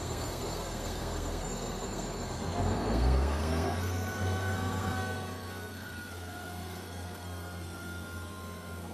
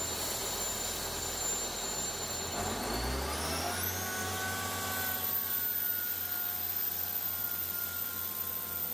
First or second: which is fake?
first